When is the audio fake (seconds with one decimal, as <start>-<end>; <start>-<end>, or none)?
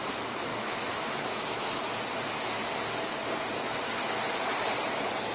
0.5-1.8